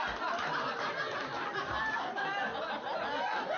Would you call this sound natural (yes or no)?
yes